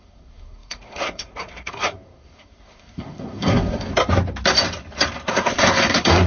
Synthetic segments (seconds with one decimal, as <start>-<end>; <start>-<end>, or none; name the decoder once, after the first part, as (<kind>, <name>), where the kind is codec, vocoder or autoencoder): 0.0-3.9 (codec, SNAC); 5.3-6.3